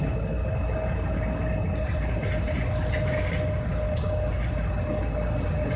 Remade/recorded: recorded